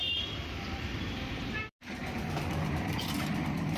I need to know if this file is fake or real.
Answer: fake